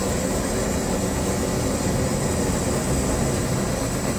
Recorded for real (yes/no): yes